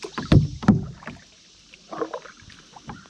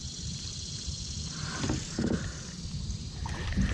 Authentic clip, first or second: first